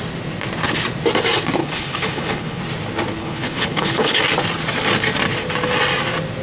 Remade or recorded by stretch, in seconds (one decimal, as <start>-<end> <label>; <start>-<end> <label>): 0.0-1.6 recorded; 1.6-2.6 remade; 2.6-3.2 recorded; 3.2-4.2 remade; 4.2-6.4 recorded